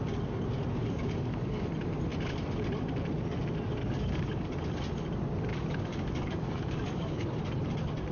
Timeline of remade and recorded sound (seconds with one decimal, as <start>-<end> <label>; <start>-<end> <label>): 0.0-0.8 recorded; 0.8-1.7 remade; 1.7-3.8 recorded; 3.8-4.5 remade; 4.5-5.5 recorded; 5.5-7.4 remade; 7.4-8.1 recorded